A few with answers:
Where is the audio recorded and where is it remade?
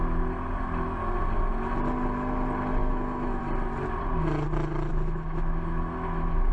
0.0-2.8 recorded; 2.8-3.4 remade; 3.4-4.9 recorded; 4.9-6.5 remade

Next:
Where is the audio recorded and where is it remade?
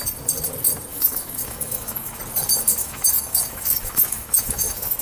0.0-0.9 recorded; 0.9-2.2 remade; 2.2-2.8 recorded; 2.8-5.0 remade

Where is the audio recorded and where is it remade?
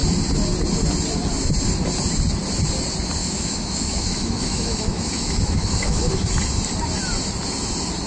0.0-3.2 recorded; 3.2-6.2 remade; 6.2-8.1 recorded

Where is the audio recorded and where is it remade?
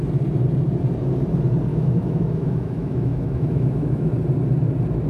0.0-1.7 recorded; 1.7-4.1 remade; 4.1-5.1 recorded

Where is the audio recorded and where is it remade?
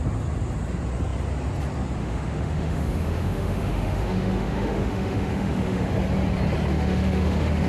0.0-2.0 recorded; 2.0-5.9 remade; 5.9-6.7 recorded; 6.7-7.7 remade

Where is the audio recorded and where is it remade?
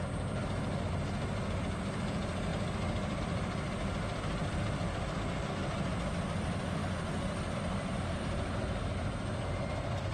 0.0-10.1 recorded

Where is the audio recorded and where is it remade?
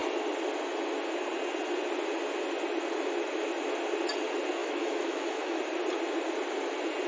0.0-4.6 recorded; 4.6-5.6 remade; 5.6-7.1 recorded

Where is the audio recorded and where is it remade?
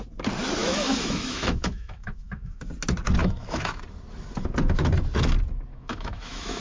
0.0-0.6 recorded; 0.6-2.7 remade; 2.7-3.2 recorded; 3.2-3.8 remade; 3.8-5.7 recorded; 5.7-6.6 remade